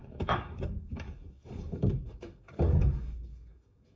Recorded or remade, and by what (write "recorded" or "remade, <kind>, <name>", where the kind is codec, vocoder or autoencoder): remade, codec, DAC